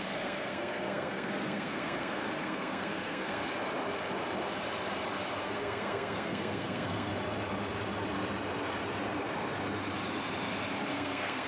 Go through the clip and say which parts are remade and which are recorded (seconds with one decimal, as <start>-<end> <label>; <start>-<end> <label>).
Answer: 0.0-3.4 remade; 3.4-5.4 recorded; 5.4-7.1 remade; 7.1-10.9 recorded; 10.9-11.5 remade